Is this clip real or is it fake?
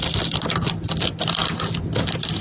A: real